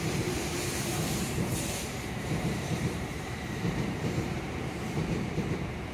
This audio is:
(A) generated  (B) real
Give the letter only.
A